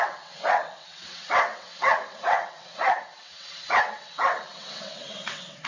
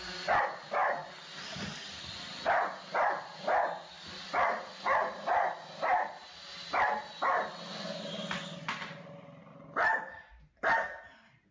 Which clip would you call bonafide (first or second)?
second